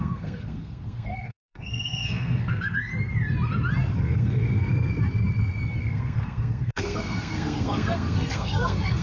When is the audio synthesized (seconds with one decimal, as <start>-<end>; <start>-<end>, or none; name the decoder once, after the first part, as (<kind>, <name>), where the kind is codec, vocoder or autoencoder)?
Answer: 0.0-2.9 (codec, SNAC); 4.0-4.9; 5.8-9.0